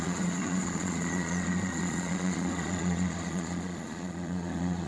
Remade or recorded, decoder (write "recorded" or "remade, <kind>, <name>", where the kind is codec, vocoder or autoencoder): remade, vocoder, Vocos